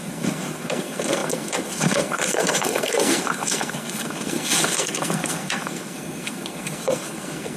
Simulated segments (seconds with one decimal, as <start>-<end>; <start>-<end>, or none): 0.0-7.6